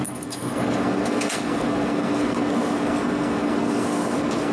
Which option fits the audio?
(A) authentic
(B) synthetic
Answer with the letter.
B